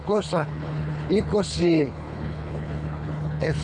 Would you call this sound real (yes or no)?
no